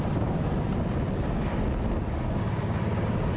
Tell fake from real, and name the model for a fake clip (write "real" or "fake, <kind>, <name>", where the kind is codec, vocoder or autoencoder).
real